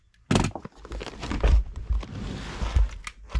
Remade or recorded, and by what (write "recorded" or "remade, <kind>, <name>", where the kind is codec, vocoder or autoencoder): recorded